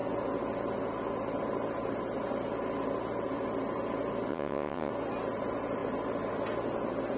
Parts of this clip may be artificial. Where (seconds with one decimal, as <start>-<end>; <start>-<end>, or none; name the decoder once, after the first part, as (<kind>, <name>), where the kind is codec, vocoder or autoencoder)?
4.3-4.9 (vocoder, WaveNeXt)